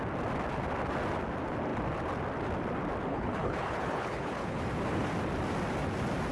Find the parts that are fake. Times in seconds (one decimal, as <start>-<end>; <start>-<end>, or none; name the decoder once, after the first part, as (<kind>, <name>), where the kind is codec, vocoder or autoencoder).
3.1-4.6 (codec, HILCodec)